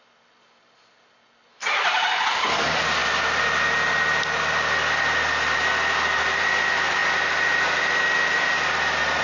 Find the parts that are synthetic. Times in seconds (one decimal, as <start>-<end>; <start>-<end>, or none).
none

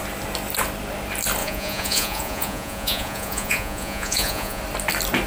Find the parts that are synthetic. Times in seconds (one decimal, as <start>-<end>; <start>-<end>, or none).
1.4-4.6

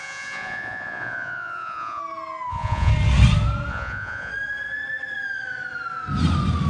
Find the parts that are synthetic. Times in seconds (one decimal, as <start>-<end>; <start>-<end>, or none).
0.0-2.0; 2.5-2.9; 3.7-4.3

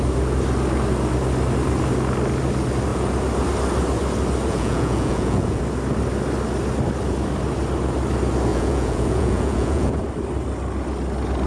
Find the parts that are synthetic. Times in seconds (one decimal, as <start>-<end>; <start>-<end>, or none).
4.5-5.6; 8.5-10.0

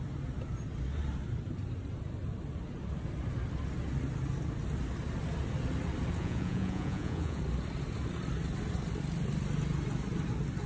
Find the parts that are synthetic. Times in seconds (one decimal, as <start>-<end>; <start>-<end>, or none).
6.2-7.4